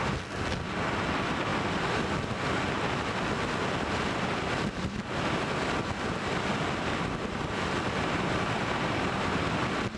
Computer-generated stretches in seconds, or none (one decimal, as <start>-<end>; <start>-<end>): none